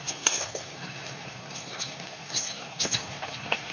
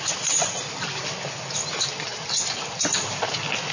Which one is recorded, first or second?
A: second